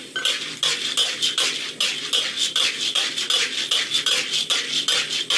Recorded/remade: recorded